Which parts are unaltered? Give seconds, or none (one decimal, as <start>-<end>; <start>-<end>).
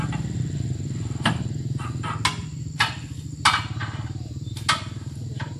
0.0-2.4; 3.1-3.8; 4.5-5.6